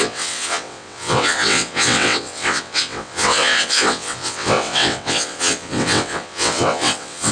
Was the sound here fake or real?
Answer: fake